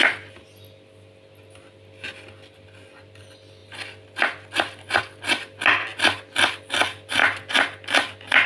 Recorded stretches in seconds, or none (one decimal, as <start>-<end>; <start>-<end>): 0.0-5.9; 6.5-7.2